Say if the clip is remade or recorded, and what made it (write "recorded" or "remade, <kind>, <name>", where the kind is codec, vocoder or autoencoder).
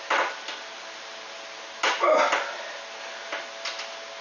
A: recorded